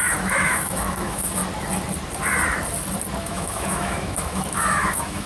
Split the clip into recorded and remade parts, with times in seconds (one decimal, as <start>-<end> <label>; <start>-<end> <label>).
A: 0.0-1.4 remade; 1.4-3.2 recorded; 3.2-5.3 remade